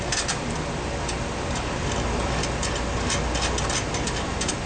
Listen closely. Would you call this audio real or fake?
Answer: real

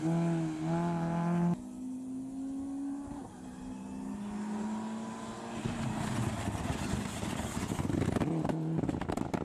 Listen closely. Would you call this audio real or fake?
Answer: real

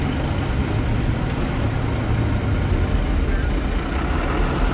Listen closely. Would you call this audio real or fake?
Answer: real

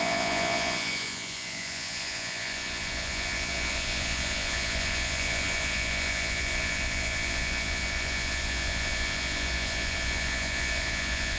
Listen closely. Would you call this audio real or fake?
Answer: fake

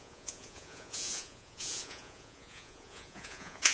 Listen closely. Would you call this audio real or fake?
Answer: fake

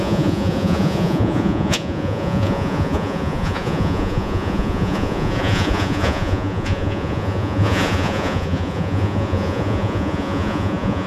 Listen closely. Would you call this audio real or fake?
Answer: fake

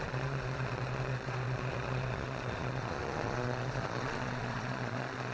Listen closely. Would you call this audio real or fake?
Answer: fake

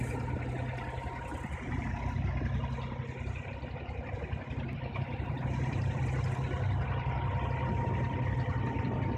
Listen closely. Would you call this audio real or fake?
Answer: real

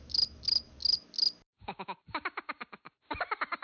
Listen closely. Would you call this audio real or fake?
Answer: real